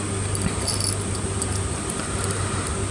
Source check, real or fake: real